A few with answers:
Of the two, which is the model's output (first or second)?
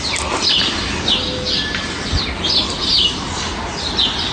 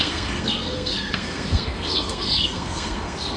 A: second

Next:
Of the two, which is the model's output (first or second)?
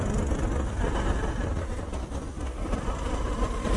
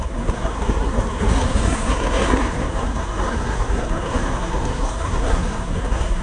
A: second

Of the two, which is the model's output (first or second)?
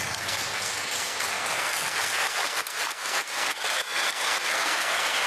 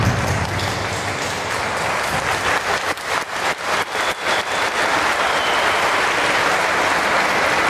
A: first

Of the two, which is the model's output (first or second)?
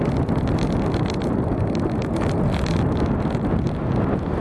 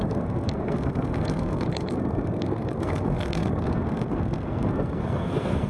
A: second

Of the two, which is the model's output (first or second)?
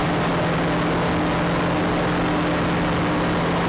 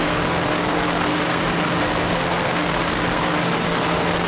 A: second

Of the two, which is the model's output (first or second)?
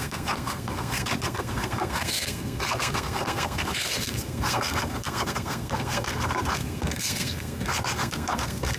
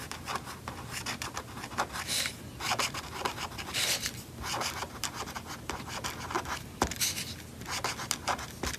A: first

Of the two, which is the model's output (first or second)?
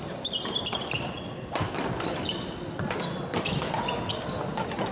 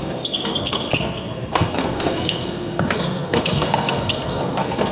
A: second